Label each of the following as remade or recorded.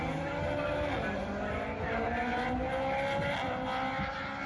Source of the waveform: recorded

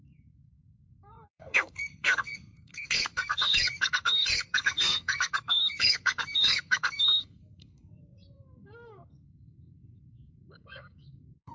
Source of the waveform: remade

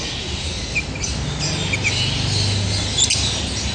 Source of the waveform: recorded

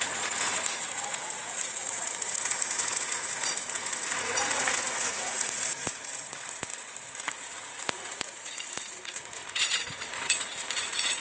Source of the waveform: remade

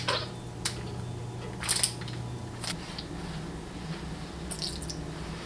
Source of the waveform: recorded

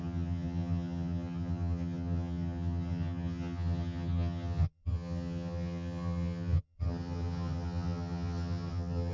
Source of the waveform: remade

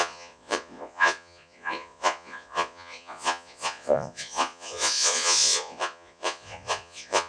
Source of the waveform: remade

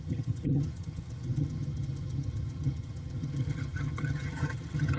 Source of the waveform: remade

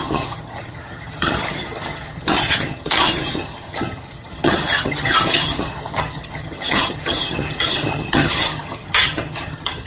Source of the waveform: remade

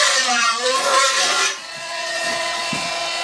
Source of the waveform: remade